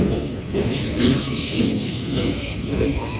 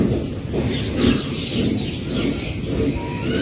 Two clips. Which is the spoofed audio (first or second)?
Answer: first